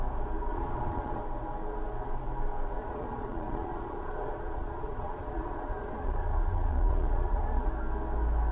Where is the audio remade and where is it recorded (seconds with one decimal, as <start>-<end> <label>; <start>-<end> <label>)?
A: 0.0-0.5 recorded; 0.5-1.2 remade; 1.2-2.8 recorded; 2.8-7.7 remade; 7.7-8.5 recorded